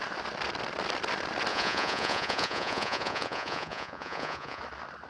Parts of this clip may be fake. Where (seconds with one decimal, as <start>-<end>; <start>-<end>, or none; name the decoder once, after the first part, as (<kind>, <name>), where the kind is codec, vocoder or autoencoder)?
1.5-4.6 (vocoder, Vocos)